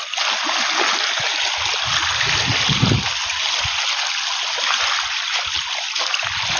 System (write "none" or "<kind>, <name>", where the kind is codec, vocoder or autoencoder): none